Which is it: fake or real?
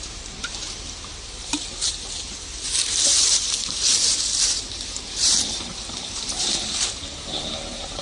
fake